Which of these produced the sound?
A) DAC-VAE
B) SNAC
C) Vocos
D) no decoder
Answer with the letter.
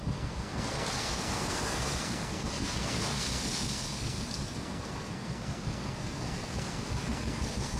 B